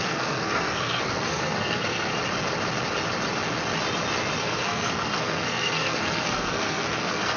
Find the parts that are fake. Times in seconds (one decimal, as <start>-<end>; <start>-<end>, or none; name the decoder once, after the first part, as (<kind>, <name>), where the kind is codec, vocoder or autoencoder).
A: 0.0-2.1 (codec, SNAC); 4.4-7.4